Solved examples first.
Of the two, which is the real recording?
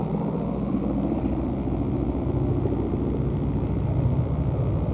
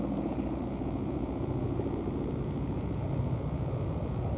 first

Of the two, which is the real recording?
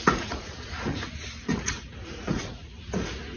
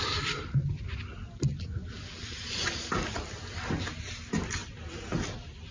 second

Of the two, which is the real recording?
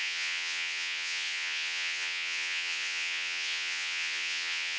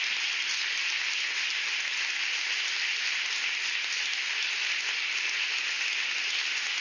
second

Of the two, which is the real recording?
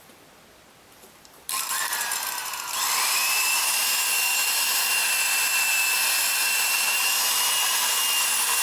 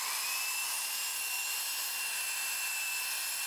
second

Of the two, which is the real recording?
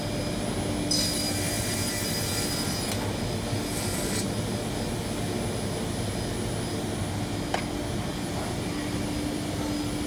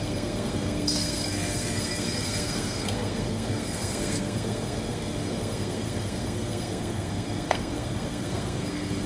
first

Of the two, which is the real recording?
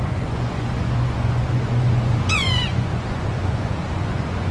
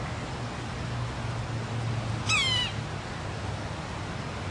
second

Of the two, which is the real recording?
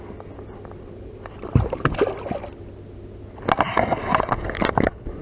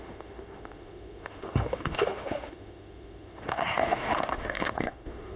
first